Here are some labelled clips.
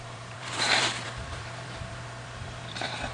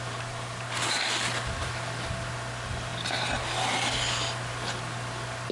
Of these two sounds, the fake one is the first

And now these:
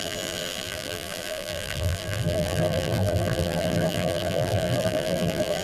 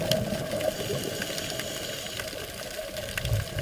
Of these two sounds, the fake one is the first